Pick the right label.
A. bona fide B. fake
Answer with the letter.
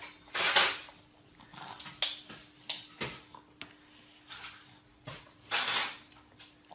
A